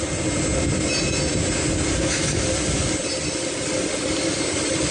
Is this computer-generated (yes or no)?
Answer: no